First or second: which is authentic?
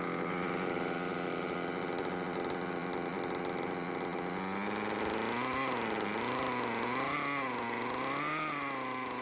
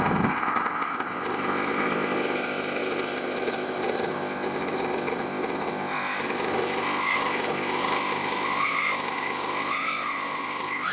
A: first